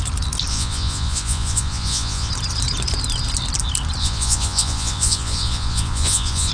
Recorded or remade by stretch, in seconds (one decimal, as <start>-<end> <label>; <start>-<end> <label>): 0.0-0.5 recorded; 0.5-2.3 remade; 2.3-4.0 recorded; 4.0-6.5 remade